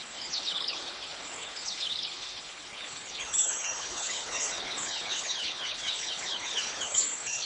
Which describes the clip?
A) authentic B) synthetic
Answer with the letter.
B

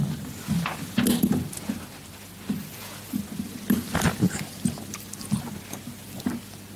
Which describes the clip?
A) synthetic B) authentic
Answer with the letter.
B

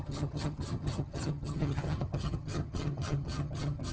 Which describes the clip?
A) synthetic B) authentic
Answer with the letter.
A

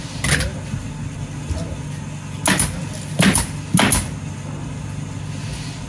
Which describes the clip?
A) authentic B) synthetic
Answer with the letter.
A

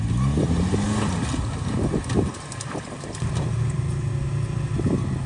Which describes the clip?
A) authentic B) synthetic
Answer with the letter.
A